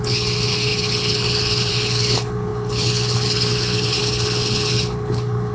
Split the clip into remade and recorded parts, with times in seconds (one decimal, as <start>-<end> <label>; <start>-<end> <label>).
0.0-5.5 remade